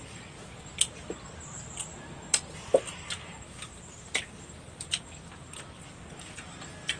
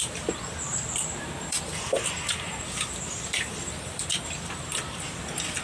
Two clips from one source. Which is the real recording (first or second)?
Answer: first